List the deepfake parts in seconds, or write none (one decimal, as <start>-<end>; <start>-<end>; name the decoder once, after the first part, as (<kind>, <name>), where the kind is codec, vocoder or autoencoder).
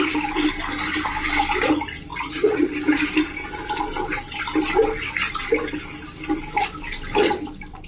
2.1-2.7 (vocoder, Vocos)